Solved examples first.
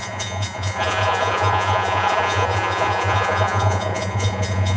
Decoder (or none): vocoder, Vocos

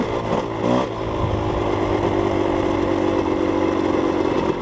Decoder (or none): none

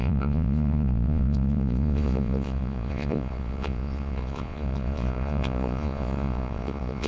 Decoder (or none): vocoder, Vocos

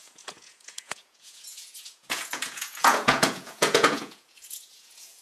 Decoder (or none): vocoder, Vocos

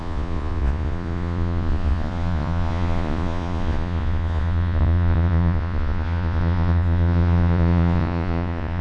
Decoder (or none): vocoder, Vocos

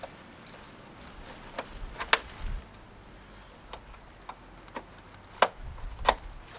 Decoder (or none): none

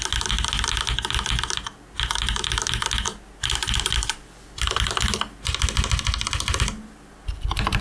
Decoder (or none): none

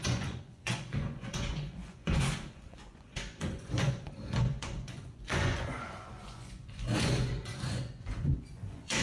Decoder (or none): vocoder, Vocos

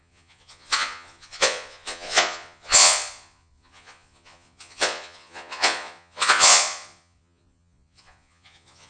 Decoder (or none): vocoder, Vocos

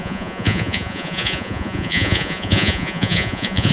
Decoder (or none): vocoder, Vocos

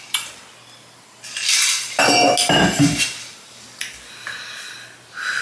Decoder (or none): none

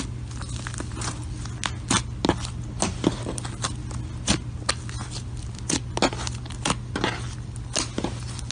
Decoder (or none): none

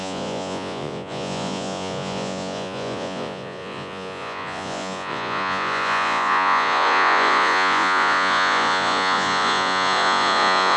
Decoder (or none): vocoder, Vocos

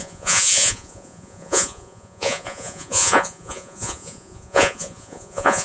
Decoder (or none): vocoder, Vocos